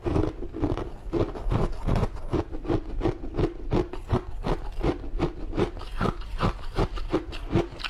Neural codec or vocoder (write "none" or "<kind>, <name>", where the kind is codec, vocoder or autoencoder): none